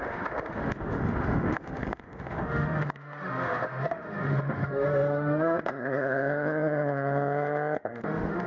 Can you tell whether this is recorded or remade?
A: remade